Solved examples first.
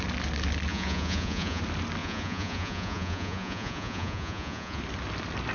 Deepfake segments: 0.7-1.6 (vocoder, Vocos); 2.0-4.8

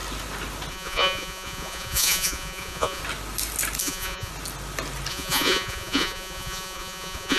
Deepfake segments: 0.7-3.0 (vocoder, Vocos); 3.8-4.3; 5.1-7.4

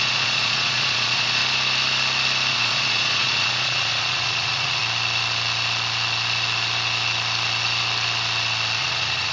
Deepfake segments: 0.0-1.4 (vocoder, Vocos); 2.5-4.8; 8.8-9.3